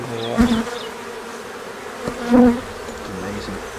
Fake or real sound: real